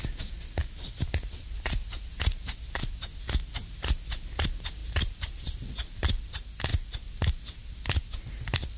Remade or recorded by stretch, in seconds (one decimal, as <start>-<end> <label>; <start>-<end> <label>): 0.0-4.8 recorded; 4.8-5.4 remade; 5.4-8.8 recorded